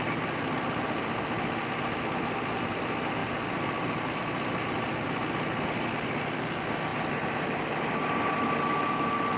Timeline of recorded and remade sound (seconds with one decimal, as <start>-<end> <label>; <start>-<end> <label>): 0.0-9.4 recorded